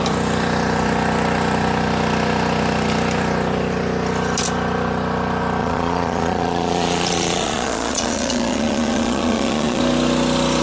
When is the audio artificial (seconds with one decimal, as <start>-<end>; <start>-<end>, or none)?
5.6-9.8